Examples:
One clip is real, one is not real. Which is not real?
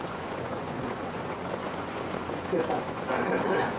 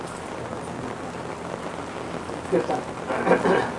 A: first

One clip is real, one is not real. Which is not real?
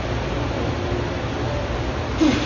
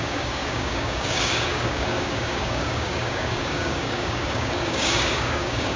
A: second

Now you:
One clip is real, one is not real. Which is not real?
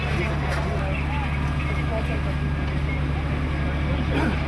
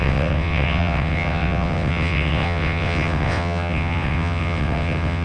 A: second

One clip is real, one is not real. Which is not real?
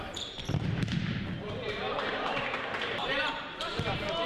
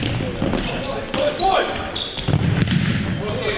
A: first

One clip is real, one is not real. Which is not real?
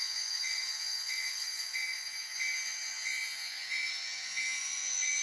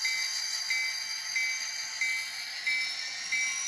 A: first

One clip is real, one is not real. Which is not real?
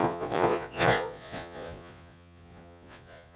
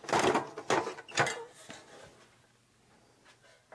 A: first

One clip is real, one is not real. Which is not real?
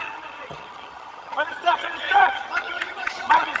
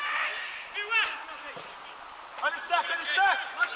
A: first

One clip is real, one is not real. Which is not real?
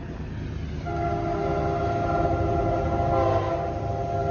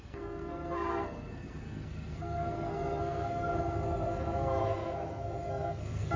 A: second